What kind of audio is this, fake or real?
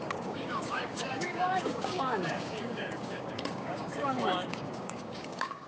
fake